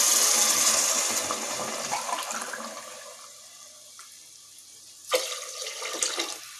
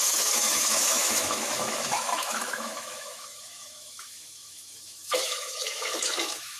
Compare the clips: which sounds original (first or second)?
first